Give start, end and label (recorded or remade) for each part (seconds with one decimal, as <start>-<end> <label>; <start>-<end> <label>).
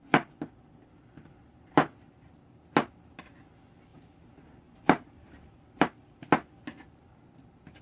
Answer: 0.0-3.9 recorded; 3.9-5.6 remade; 5.6-7.8 recorded